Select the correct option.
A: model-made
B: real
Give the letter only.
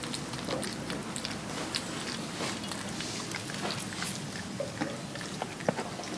B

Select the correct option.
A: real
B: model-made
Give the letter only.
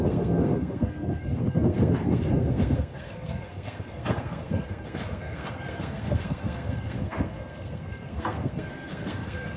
B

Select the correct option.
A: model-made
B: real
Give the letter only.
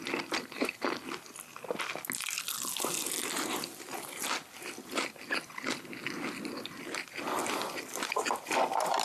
B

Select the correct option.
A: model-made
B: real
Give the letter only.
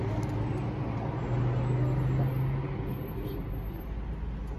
B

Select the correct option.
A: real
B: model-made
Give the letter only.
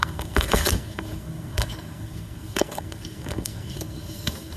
B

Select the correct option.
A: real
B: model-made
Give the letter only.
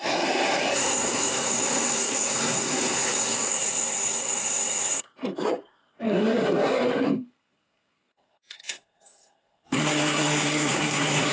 B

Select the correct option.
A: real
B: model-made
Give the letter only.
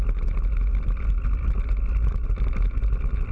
A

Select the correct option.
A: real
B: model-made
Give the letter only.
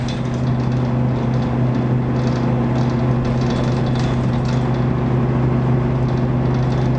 A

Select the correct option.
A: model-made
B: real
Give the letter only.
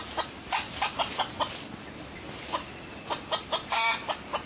B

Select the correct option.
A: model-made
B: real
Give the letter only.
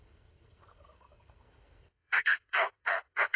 A